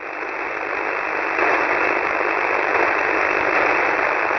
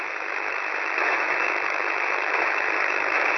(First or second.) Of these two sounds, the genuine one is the first